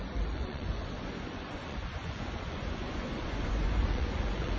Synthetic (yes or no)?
yes